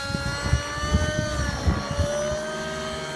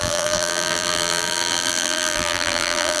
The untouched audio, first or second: first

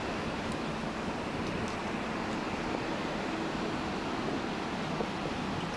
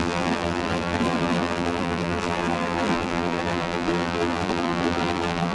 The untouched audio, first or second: first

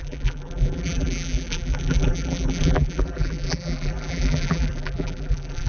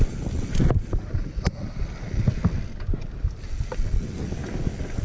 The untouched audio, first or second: second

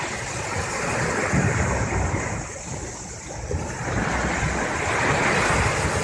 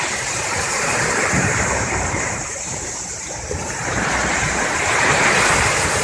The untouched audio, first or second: first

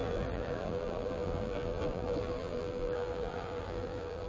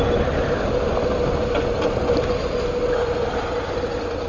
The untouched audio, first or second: second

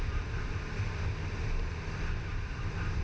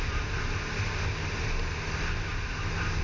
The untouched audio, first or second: second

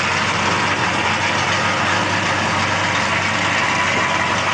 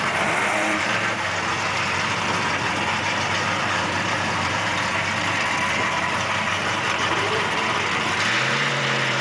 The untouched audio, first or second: first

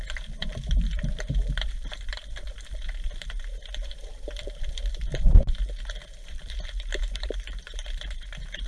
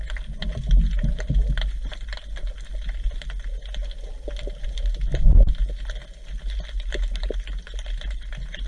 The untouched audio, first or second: second